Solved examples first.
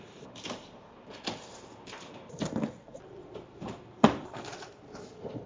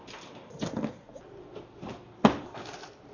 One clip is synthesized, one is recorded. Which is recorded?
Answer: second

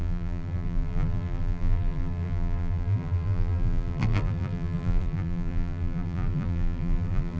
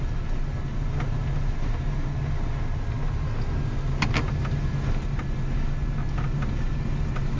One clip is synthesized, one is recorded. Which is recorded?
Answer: second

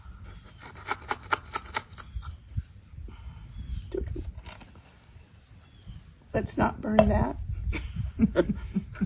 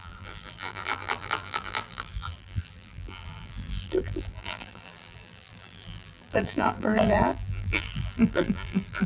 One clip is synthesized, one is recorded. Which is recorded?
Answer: first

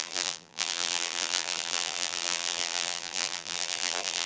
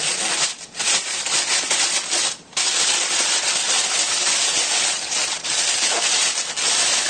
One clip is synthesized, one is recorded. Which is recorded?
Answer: second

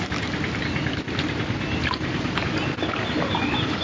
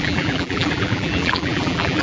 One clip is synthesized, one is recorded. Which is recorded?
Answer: first